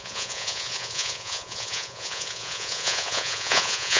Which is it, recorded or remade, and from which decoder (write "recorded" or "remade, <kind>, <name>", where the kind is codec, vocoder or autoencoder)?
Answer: remade, vocoder, Vocos